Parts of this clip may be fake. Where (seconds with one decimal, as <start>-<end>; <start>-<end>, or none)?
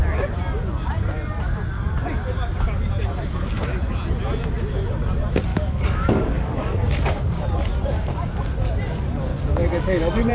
5.5-7.4; 9.3-10.3